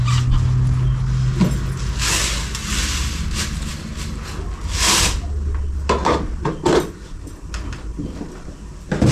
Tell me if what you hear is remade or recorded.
recorded